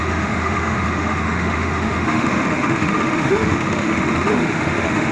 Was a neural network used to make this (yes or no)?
yes